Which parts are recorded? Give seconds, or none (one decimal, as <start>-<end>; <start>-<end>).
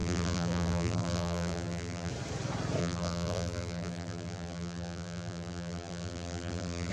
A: 2.1-2.8